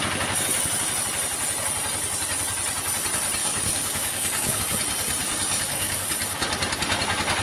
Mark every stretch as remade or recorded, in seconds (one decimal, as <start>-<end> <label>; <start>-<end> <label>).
0.0-3.4 recorded; 3.4-4.6 remade; 4.6-5.2 recorded; 5.2-6.1 remade; 6.1-7.4 recorded